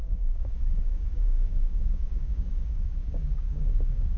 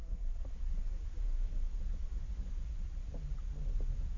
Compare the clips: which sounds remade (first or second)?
first